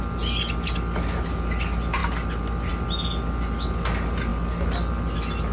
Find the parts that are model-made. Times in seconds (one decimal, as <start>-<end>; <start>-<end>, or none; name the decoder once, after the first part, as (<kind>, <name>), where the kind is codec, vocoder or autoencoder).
none